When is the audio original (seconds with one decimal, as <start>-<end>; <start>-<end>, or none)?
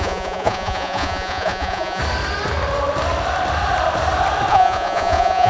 2.0-4.5